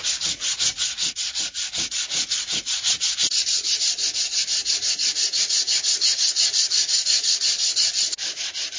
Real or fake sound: fake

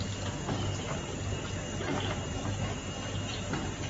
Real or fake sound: real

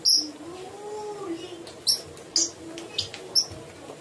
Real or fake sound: real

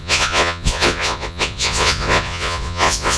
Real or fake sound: fake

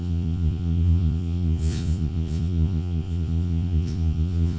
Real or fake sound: fake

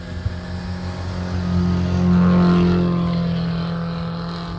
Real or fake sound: real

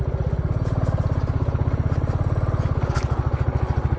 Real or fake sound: real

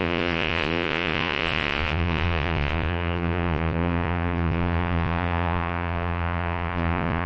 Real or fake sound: fake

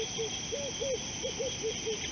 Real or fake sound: real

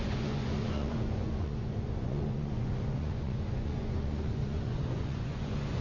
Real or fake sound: fake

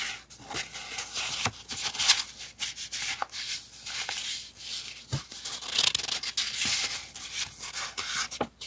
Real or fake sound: real